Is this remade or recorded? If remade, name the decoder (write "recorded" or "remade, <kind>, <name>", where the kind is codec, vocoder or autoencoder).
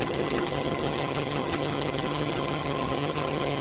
remade, vocoder, HiFi-GAN